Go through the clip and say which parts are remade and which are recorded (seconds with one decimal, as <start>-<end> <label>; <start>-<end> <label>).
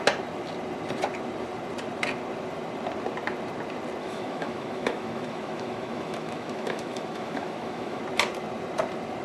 0.0-4.0 recorded; 4.0-8.0 remade; 8.0-9.2 recorded